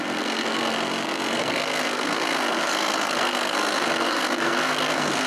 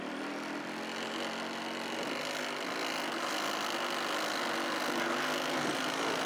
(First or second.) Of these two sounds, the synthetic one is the first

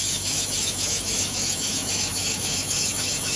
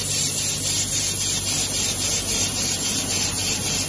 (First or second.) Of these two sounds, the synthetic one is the first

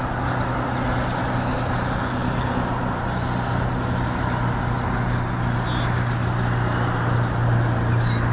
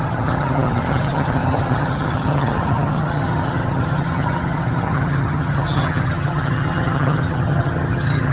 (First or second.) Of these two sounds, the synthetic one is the second